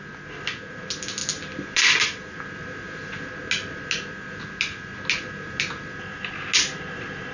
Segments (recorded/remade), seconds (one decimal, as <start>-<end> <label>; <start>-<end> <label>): 0.0-7.3 recorded